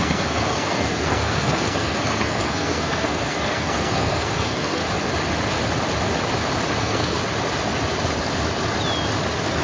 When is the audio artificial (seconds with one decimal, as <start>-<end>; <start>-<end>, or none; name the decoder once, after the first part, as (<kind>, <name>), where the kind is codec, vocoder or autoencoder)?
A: 0.0-4.8 (codec, SNAC); 6.8-7.2